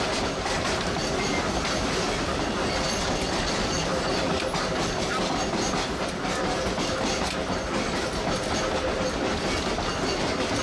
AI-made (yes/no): no